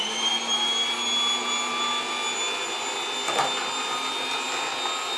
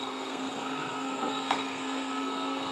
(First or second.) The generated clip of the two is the second